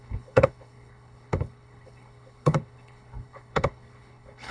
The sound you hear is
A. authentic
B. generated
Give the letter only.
B